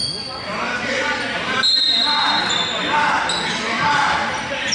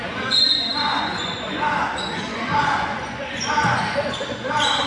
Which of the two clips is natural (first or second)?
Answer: first